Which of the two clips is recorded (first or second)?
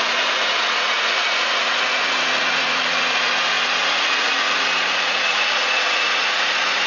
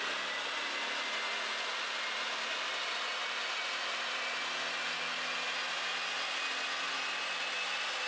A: second